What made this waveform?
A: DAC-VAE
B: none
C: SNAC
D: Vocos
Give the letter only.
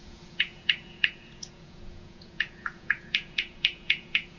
D